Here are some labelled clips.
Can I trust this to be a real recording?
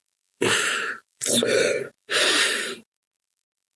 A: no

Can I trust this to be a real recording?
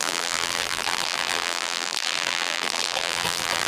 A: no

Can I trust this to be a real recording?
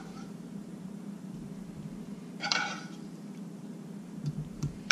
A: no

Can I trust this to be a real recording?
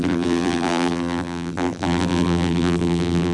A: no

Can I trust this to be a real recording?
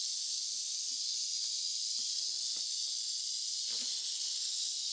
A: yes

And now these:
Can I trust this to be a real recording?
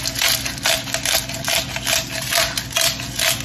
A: yes